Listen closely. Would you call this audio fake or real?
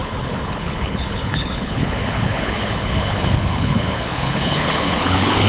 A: fake